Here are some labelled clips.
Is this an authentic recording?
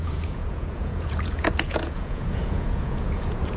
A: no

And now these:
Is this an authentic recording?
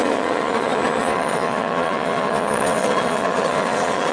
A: no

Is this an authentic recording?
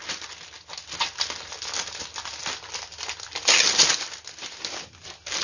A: yes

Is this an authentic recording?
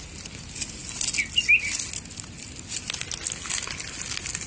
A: yes